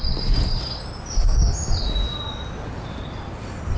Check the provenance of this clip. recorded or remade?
recorded